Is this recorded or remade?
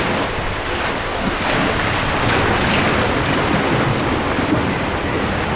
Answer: recorded